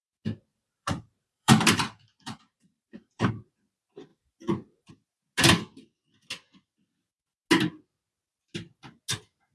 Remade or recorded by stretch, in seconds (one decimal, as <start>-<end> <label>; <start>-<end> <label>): 0.0-0.5 recorded; 0.5-3.3 remade; 3.3-4.1 recorded; 4.1-4.9 remade; 4.9-9.5 recorded